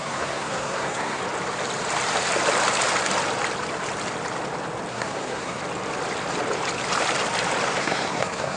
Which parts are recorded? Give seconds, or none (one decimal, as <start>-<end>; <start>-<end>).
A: 1.2-4.9; 5.6-7.8